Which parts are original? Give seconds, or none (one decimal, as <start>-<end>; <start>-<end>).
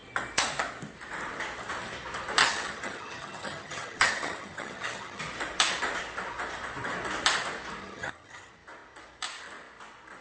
0.0-2.4; 5.2-7.8; 8.5-10.2